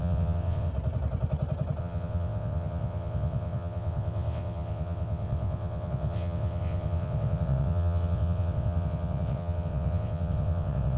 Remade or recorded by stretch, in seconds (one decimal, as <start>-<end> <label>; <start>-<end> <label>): 0.0-0.7 remade; 0.7-1.8 recorded; 1.8-11.0 remade